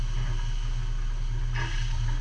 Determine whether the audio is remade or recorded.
recorded